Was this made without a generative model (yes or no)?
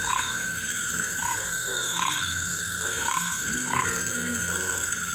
no